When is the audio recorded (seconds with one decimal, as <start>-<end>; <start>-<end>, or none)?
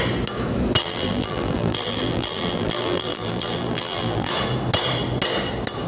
0.0-0.8; 4.3-5.9